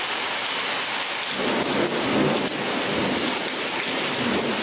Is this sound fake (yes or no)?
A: no